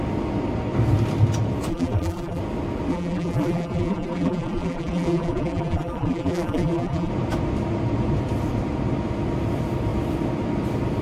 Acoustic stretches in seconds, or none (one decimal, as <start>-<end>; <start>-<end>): 0.0-1.7; 2.4-2.9; 7.1-11.0